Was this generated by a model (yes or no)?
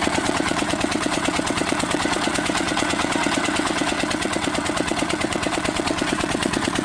yes